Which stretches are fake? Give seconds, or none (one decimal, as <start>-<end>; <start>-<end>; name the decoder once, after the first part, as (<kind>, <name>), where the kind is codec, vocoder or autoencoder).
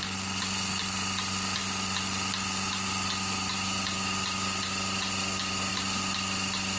none